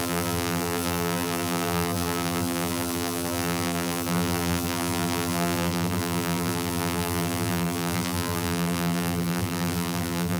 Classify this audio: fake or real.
fake